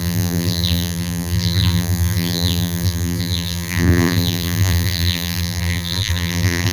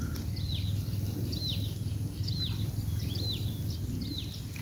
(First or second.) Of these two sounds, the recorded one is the second